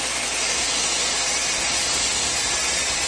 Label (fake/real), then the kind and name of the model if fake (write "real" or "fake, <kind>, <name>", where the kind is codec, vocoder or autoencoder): real